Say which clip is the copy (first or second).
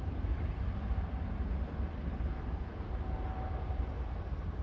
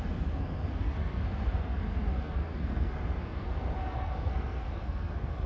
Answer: second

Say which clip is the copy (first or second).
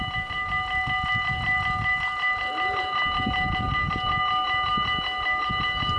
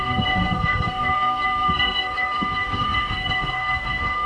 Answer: second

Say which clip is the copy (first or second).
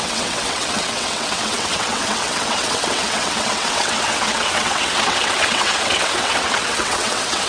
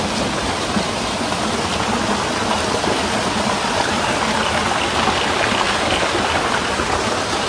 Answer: first